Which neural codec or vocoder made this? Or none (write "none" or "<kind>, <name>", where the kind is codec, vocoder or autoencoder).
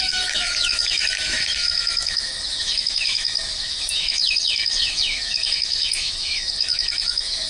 autoencoder, DAC-VAE